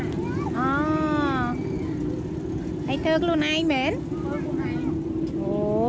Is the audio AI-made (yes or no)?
no